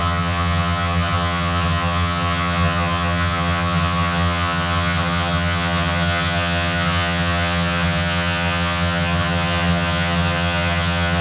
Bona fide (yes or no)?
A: no